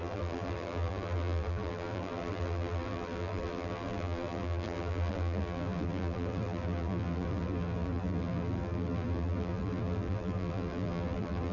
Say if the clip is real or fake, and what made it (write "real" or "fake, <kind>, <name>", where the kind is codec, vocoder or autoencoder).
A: fake, vocoder, BigVGAN v2